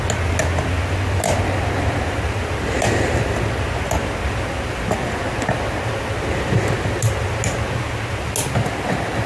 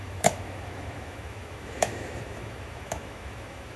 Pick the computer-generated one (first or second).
second